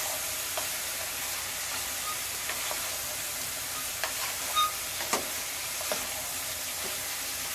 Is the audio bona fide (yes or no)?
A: no